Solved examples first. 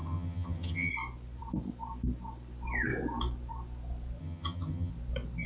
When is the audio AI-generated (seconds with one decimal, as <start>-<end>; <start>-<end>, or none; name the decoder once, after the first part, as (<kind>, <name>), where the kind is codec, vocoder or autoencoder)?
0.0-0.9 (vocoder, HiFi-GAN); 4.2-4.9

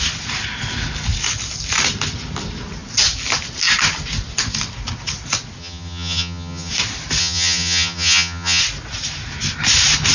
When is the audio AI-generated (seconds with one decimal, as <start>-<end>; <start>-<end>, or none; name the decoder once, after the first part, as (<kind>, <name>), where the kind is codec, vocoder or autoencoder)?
5.6-6.7 (vocoder, HiFi-GAN); 7.2-8.6

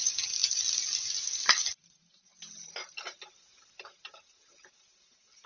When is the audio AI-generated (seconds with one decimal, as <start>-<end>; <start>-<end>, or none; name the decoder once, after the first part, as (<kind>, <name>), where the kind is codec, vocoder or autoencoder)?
none